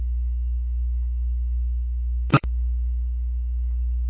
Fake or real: fake